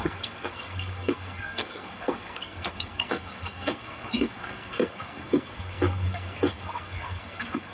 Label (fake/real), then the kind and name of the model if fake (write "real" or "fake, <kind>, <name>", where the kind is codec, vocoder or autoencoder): fake, codec, SNAC